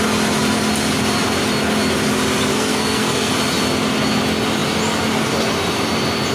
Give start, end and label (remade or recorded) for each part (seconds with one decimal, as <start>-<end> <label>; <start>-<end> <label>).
0.0-2.5 recorded; 2.5-3.3 remade; 3.3-6.3 recorded